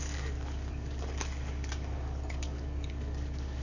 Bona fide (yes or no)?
no